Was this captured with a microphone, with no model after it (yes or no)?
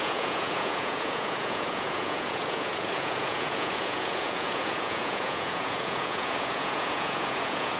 no